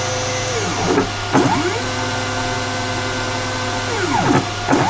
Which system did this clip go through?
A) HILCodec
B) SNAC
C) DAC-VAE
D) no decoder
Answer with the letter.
D